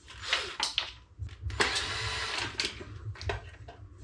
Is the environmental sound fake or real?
real